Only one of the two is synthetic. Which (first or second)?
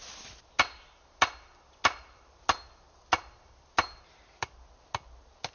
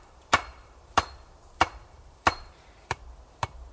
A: second